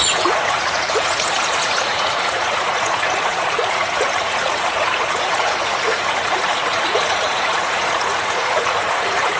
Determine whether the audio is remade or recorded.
remade